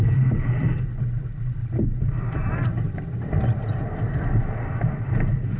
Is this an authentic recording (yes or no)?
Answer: yes